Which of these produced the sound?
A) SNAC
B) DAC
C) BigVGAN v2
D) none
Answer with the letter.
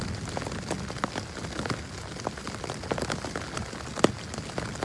D